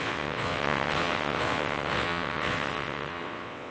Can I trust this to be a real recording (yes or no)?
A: no